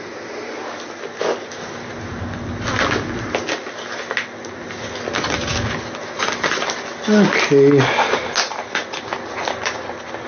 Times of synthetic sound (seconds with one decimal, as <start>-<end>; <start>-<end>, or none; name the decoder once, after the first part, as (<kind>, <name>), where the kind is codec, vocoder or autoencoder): none

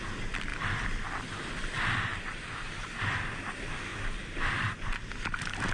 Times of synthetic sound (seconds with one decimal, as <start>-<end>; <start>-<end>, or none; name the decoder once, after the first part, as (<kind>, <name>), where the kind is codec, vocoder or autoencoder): 0.5-1.0 (vocoder, BigVGAN v2); 2.1-2.8; 3.9-4.8

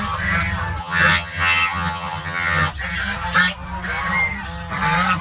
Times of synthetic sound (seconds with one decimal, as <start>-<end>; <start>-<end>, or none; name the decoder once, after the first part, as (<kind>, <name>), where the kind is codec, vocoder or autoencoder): 0.8-2.7 (vocoder, HiFi-GAN)

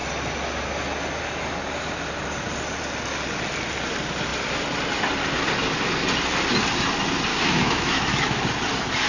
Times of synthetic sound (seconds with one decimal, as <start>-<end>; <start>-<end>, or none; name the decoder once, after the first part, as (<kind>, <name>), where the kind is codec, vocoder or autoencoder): 7.3-8.4 (autoencoder, DAC-VAE)

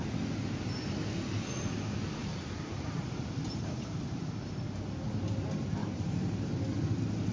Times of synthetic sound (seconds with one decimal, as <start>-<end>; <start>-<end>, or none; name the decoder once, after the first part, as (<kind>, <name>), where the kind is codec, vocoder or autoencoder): 2.2-4.7 (vocoder, BigVGAN v2); 5.8-6.5

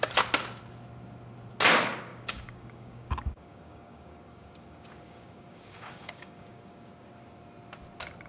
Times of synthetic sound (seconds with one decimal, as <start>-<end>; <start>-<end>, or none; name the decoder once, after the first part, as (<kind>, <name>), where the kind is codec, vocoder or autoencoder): 2.1-7.1 (codec, DAC)